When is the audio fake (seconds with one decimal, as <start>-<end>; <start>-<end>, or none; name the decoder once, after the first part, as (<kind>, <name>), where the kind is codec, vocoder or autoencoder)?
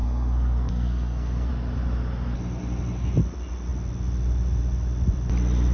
0.0-1.5 (codec, SNAC)